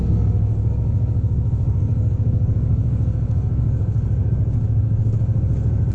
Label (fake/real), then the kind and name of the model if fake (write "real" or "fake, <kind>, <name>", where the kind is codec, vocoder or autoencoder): fake, codec, DAC